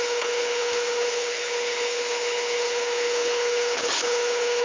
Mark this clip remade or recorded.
remade